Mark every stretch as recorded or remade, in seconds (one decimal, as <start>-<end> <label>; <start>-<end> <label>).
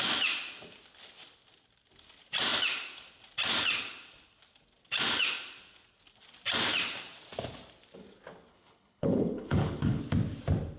0.0-8.5 recorded; 8.5-10.0 remade; 10.0-10.8 recorded